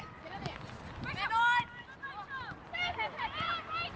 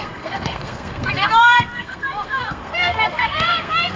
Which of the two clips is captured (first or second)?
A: first